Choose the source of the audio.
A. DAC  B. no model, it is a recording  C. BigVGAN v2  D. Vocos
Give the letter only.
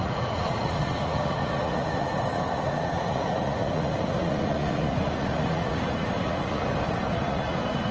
D